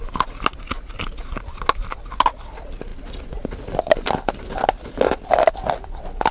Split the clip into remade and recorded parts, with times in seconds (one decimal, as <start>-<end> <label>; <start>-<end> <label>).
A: 0.0-6.3 recorded